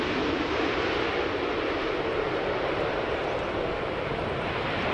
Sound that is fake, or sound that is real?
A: real